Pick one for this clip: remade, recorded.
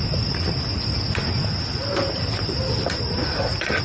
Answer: recorded